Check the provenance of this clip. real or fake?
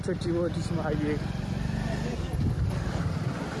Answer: real